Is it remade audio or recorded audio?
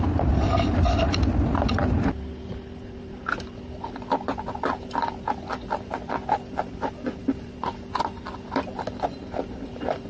recorded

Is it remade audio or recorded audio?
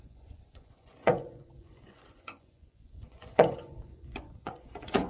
remade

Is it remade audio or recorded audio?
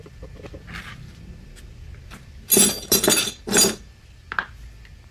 recorded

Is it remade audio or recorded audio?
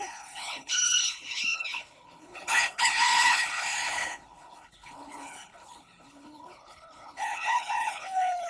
remade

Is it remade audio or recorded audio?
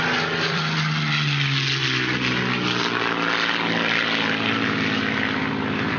remade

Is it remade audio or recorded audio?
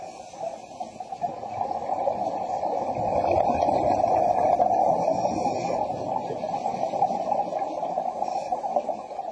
recorded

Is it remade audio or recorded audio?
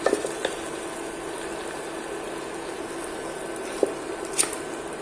recorded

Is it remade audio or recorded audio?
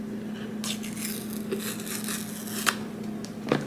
recorded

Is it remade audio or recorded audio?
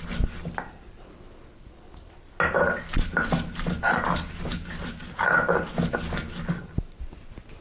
recorded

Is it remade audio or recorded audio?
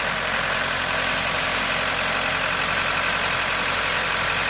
recorded